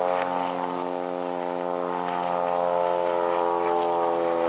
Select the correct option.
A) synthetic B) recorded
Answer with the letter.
B